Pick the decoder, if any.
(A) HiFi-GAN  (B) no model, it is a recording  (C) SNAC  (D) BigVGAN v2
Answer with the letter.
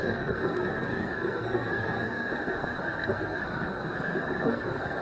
C